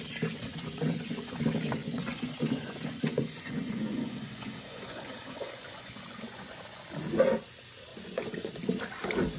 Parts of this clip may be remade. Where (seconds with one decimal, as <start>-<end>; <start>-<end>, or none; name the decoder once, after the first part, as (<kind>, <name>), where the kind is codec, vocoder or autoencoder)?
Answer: 0.5-1.4 (vocoder, Vocos); 1.8-6.8; 7.9-8.5